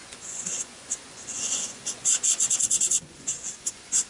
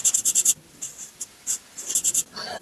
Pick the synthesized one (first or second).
first